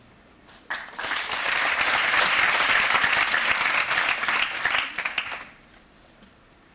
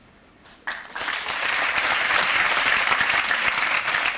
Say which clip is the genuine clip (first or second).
first